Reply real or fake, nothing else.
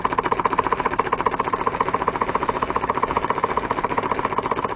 real